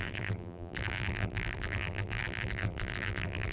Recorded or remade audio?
remade